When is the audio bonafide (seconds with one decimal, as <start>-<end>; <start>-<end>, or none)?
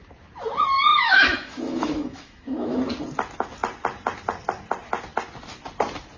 0.0-0.9; 2.8-6.2